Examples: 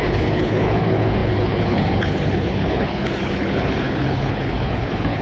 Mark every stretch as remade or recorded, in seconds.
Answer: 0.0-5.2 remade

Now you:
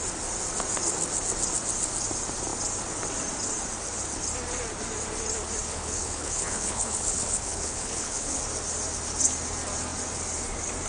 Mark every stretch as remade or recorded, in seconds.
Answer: 0.0-5.7 recorded; 5.7-8.4 remade; 8.4-10.9 recorded

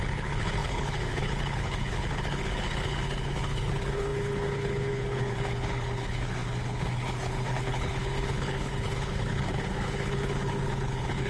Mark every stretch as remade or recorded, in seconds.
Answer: 0.0-11.3 remade

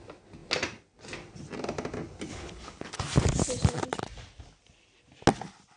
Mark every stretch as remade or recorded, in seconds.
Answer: 0.0-2.3 recorded; 2.3-3.0 remade; 3.0-5.8 recorded

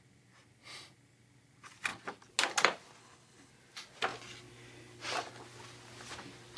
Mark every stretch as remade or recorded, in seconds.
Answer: 0.0-3.0 recorded; 3.0-3.5 remade; 3.5-6.6 recorded